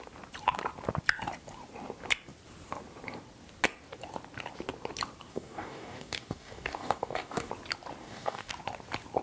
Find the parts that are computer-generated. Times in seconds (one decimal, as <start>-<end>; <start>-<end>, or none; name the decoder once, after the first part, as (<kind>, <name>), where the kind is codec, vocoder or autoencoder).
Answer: 5.3-7.5 (codec, DAC); 8.0-8.5